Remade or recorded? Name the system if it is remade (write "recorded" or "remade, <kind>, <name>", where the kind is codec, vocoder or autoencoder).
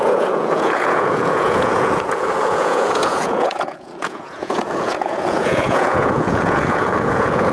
remade, vocoder, Vocos